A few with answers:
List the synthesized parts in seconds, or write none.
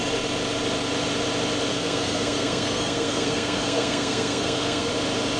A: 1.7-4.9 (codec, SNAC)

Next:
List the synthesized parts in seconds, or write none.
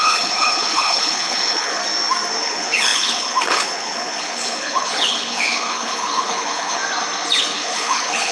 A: 0.0-1.8 (codec, HILCodec); 2.4-6.8; 7.4-8.3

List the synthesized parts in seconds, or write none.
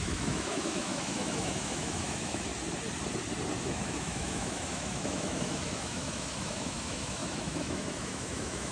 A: 0.0-2.5 (autoencoder, DAC-VAE); 3.6-8.7